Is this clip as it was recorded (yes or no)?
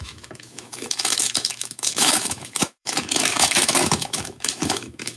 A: no